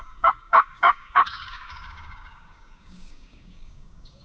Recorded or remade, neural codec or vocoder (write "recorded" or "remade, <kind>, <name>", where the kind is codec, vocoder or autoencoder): remade, codec, DAC